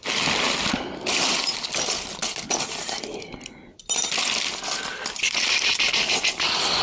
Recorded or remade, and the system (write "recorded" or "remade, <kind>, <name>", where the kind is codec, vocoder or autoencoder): recorded